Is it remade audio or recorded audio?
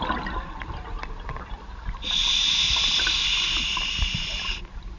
recorded